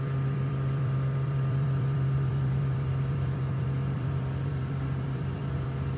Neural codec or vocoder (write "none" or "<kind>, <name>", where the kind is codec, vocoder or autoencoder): vocoder, BigVGAN v2